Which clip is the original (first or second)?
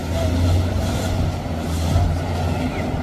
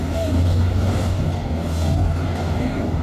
first